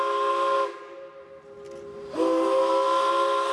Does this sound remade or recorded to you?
recorded